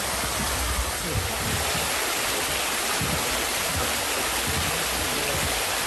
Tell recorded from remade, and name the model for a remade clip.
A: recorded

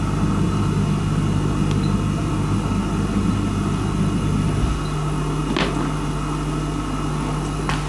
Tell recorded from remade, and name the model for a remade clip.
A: recorded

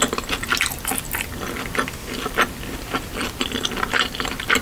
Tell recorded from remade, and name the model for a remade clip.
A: recorded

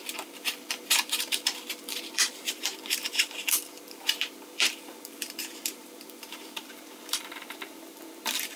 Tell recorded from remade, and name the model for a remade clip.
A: remade, vocoder, BigVGAN v2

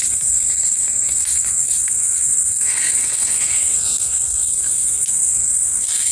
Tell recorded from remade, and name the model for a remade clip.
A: remade, codec, SNAC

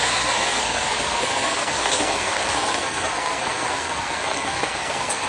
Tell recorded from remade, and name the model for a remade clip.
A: remade, codec, SNAC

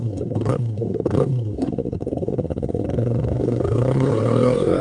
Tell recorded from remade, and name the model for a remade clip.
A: remade, codec, SNAC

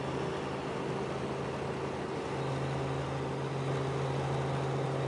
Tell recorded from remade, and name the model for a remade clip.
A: recorded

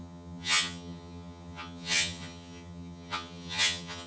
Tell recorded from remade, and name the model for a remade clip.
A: remade, vocoder, HiFi-GAN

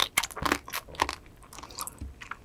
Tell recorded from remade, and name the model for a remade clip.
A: recorded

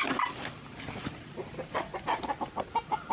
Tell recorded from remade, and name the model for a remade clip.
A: recorded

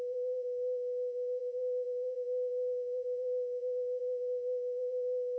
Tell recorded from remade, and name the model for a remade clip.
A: remade, vocoder, BigVGAN v2